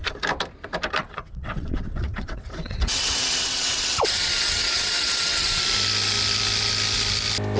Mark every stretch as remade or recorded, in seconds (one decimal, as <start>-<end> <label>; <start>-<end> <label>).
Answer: 0.0-1.0 recorded; 1.0-5.6 remade; 5.6-7.6 recorded